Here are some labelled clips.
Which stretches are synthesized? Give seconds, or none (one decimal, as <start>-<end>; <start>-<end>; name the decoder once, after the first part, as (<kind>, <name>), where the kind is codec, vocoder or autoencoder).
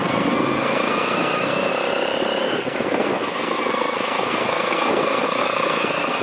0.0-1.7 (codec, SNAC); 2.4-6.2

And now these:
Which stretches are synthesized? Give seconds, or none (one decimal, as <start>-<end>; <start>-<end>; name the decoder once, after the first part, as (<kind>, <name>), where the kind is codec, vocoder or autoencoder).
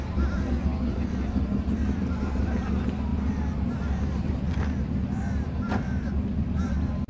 none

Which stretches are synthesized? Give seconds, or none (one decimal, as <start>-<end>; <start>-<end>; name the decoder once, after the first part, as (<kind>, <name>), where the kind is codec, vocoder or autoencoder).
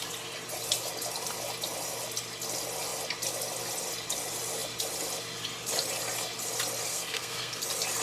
6.9-7.6 (codec, SNAC)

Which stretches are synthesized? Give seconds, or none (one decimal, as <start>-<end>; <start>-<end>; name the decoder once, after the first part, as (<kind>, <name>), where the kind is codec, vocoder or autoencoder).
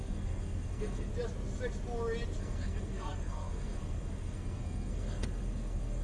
0.0-1.1 (codec, SNAC); 2.4-6.0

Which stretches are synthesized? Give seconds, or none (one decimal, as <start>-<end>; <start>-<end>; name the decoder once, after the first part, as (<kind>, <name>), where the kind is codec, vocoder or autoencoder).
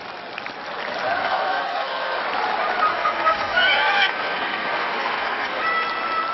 1.2-2.2 (codec, SNAC); 2.9-5.6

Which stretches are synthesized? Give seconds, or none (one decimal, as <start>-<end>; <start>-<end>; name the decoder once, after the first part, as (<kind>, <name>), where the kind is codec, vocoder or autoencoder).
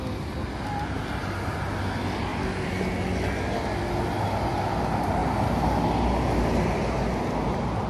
none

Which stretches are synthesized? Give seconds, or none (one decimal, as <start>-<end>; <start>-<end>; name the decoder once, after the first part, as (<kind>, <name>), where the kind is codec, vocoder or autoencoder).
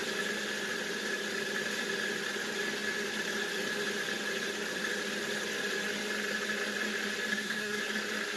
7.3-7.8 (codec, SNAC)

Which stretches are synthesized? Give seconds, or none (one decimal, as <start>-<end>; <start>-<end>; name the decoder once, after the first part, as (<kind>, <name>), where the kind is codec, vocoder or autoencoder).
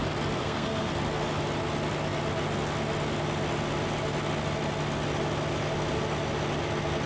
0.4-0.9 (codec, SNAC)